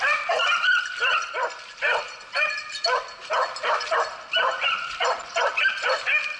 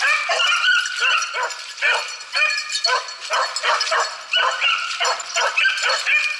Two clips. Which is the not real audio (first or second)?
first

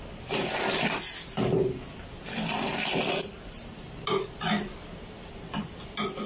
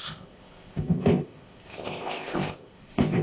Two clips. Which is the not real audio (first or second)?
second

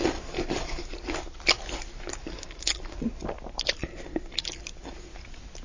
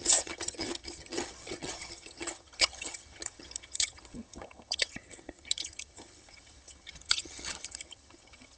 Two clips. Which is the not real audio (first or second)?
second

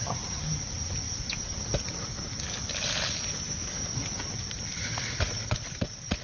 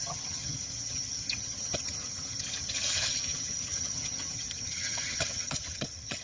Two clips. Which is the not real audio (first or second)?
second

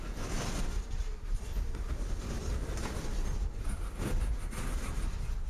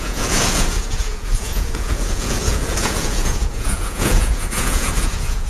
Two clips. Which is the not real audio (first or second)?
second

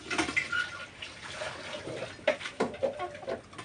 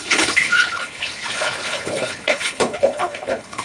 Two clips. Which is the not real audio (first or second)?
second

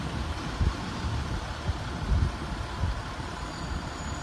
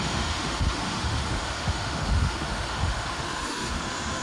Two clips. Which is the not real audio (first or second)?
second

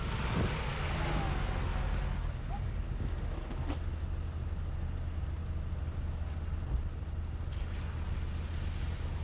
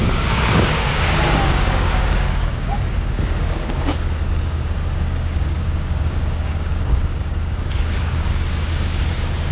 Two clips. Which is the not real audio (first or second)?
second